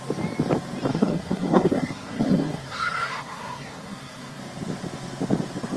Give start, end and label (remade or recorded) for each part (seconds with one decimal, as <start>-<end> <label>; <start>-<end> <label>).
0.0-0.9 recorded; 0.9-4.4 remade; 4.4-5.8 recorded

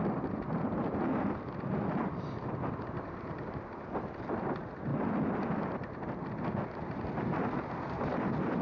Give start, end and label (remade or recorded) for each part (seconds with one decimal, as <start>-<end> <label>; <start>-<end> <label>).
0.0-8.6 recorded

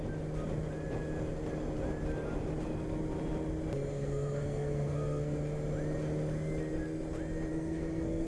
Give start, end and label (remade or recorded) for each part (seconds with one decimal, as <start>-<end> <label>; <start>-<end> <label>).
0.0-3.9 recorded; 3.9-5.4 remade; 5.4-7.5 recorded; 7.5-8.3 remade

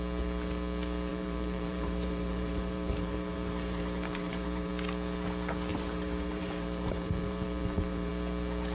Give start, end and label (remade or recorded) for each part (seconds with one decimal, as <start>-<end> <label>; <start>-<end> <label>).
0.0-1.1 recorded; 1.1-4.7 remade; 4.7-5.7 recorded; 5.7-8.1 remade; 8.1-8.7 recorded